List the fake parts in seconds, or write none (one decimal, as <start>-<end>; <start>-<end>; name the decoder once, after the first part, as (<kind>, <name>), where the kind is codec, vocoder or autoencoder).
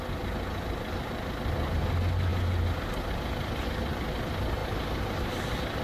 none